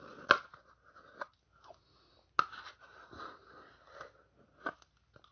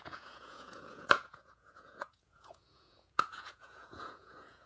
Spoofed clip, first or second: second